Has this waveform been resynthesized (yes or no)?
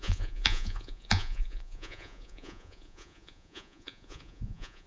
yes